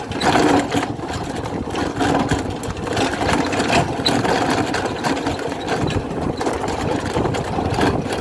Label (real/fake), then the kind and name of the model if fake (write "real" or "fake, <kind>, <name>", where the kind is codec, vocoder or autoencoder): real